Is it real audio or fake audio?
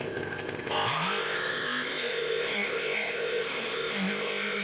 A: fake